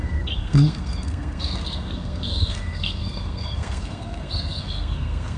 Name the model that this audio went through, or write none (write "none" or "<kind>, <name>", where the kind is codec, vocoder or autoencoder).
codec, SNAC